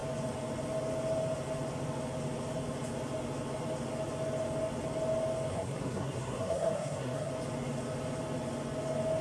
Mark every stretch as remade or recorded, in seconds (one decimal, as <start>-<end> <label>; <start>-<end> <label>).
0.0-5.5 recorded; 5.5-7.3 remade; 7.3-9.2 recorded